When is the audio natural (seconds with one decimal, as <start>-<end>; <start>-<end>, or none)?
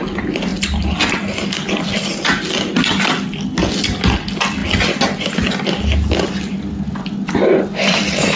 0.0-8.4